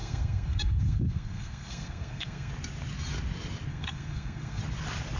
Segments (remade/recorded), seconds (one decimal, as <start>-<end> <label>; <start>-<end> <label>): 0.0-2.5 remade; 2.5-3.7 recorded; 3.7-4.6 remade; 4.6-5.2 recorded